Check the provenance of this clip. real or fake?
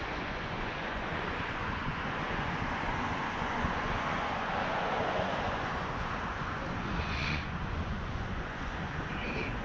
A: fake